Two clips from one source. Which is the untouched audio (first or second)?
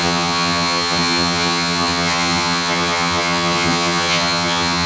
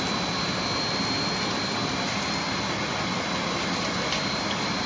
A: second